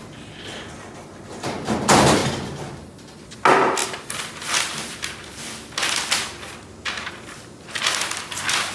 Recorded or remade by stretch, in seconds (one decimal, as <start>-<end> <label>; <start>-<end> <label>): 0.0-8.7 recorded